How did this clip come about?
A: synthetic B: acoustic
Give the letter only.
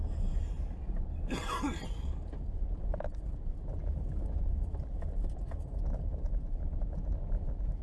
B